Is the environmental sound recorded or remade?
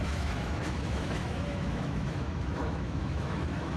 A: remade